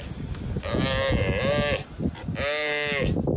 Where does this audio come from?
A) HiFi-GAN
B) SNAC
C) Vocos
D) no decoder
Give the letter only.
D